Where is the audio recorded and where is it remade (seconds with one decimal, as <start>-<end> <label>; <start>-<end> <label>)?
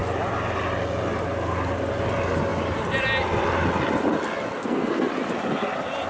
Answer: 0.0-4.6 recorded; 4.6-5.1 remade; 5.1-6.1 recorded